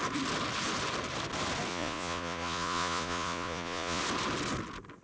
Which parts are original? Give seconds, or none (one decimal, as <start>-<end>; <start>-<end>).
0.0-1.7; 4.0-5.0